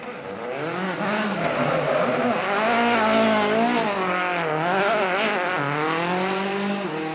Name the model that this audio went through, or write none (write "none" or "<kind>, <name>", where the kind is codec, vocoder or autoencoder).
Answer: none